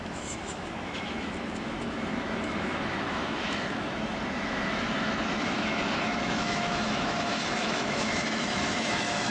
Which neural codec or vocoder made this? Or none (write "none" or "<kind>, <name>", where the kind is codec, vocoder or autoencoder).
autoencoder, DAC-VAE